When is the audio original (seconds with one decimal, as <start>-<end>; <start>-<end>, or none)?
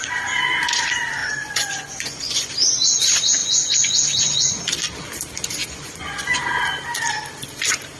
0.0-1.2; 2.5-3.4; 4.6-5.6; 6.4-8.0